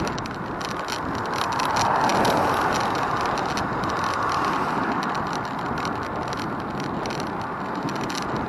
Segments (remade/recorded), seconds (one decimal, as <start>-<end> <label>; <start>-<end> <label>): 0.0-8.5 recorded